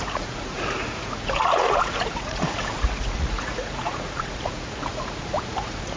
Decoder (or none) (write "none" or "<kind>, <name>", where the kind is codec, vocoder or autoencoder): vocoder, Vocos